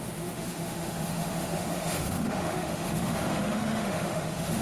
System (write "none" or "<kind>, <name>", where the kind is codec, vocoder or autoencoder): autoencoder, DAC-VAE